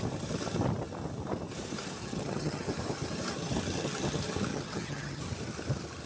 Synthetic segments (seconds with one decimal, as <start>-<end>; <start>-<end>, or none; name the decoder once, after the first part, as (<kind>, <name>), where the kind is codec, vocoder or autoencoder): 2.0-2.7 (vocoder, HiFi-GAN); 4.5-5.2

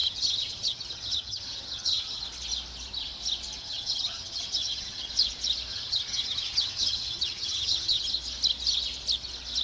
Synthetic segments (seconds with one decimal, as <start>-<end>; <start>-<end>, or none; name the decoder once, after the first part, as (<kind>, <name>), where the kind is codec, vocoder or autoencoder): 0.0-2.2 (vocoder, HiFi-GAN); 3.6-5.1; 5.7-8.0

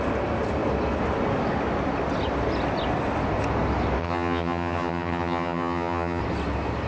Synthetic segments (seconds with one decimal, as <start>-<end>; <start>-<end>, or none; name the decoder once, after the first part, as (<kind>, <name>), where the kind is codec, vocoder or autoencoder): 4.0-6.2 (vocoder, HiFi-GAN)

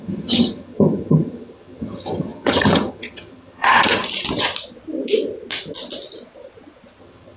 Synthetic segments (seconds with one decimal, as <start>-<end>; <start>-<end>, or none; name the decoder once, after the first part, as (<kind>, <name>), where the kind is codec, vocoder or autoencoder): 0.0-4.0 (vocoder, HiFi-GAN); 7.0-7.4

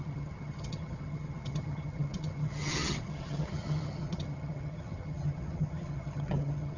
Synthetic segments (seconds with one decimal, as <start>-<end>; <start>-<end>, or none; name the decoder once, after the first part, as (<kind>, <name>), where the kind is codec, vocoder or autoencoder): 0.0-6.8 (vocoder, HiFi-GAN)